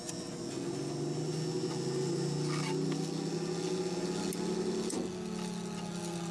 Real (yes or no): yes